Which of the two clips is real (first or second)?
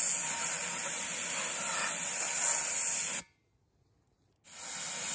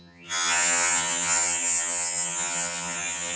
first